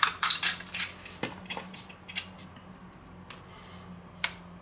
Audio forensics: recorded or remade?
recorded